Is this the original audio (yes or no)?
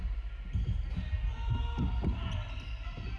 yes